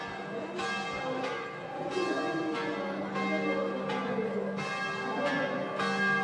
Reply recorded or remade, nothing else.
recorded